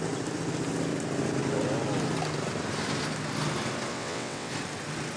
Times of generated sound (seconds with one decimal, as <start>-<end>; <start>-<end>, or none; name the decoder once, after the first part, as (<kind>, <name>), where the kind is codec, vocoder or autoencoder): 3.9-4.5 (vocoder, WaveNeXt)